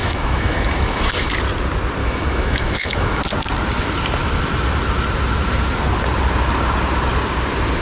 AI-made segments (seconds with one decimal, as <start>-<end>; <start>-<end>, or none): 0.0-1.3; 2.0-3.2